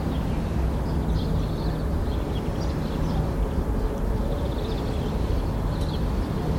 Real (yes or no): yes